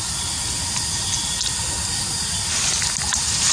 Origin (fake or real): real